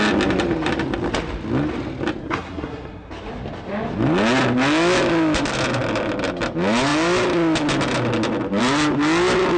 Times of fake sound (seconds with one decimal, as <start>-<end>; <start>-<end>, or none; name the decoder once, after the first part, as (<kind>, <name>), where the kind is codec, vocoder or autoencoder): 2.2-3.1 (codec, SNAC)